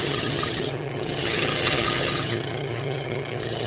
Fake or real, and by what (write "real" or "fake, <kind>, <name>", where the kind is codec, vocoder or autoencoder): fake, vocoder, HiFi-GAN